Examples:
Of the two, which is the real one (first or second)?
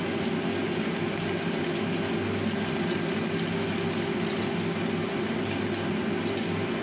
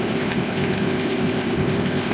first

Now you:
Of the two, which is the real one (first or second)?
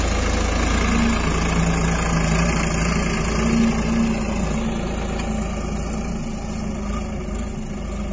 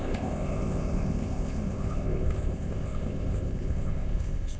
first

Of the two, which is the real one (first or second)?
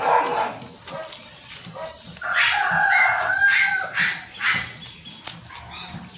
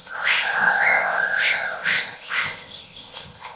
first